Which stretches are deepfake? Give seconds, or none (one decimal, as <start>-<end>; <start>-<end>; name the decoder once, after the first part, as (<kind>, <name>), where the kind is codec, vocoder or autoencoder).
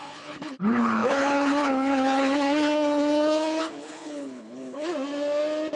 0.0-4.9 (codec, HILCodec)